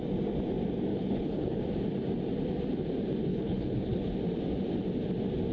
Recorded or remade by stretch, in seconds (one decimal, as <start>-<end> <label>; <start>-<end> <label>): 0.0-0.9 recorded; 0.9-1.6 remade; 1.6-3.3 recorded; 3.3-4.1 remade; 4.1-5.5 recorded